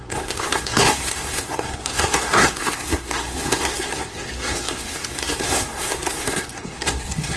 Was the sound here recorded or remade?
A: remade